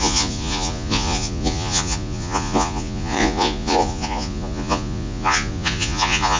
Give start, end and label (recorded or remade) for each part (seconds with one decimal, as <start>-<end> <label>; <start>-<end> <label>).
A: 0.0-6.4 remade